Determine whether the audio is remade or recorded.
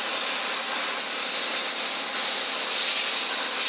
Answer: recorded